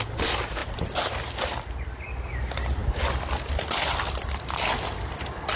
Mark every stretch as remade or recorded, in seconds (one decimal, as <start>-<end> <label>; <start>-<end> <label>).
0.0-5.6 recorded